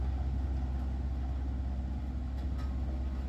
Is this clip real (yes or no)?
yes